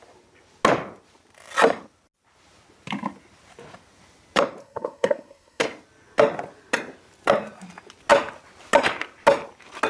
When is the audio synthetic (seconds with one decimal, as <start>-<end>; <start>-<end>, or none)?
4.6-5.6